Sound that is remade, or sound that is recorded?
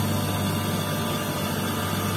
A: recorded